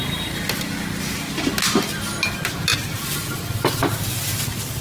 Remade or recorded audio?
recorded